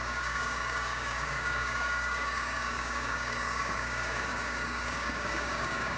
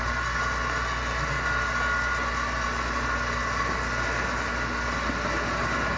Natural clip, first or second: second